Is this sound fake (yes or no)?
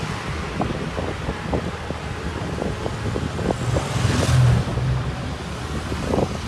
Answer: yes